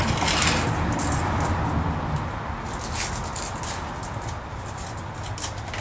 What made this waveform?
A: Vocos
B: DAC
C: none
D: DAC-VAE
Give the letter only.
C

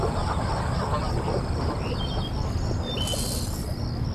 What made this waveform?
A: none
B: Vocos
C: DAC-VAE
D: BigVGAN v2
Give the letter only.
A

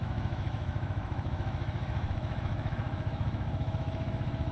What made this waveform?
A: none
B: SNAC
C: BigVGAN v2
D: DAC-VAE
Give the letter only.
D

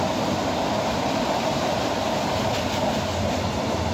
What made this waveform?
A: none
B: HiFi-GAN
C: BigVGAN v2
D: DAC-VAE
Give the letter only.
A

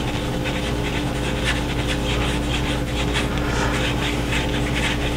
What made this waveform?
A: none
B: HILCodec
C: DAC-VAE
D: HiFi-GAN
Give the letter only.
A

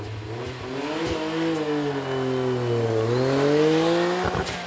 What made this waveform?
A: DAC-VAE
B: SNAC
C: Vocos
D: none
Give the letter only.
D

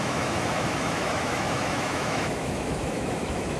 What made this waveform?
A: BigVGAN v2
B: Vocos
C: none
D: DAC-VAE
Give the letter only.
D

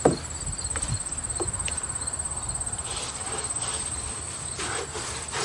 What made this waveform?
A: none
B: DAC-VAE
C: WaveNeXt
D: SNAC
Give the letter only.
A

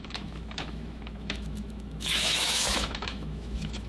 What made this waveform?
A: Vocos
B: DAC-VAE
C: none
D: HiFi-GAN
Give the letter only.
B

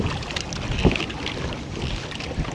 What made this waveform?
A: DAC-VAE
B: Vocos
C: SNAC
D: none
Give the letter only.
D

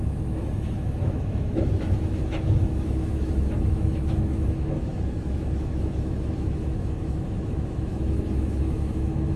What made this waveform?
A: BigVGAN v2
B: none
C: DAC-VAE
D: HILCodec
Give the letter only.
C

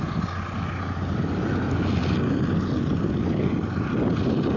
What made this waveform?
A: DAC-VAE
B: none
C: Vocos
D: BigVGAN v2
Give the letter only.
B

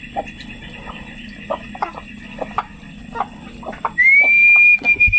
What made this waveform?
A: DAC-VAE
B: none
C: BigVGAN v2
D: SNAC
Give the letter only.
B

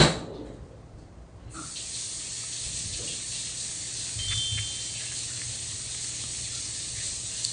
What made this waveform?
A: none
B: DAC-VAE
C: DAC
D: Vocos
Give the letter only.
A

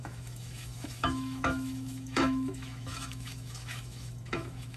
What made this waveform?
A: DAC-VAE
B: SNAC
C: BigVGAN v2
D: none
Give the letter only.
A